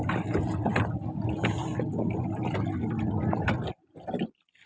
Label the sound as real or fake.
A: real